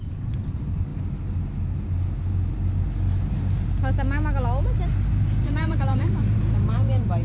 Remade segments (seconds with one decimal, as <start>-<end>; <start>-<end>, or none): 0.0-0.9; 5.2-7.2